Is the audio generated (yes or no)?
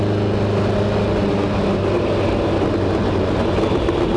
no